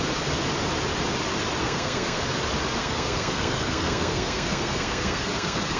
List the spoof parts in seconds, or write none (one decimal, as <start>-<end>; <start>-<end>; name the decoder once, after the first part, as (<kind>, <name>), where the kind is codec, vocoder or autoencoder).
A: 1.6-2.2 (codec, SNAC); 2.8-5.8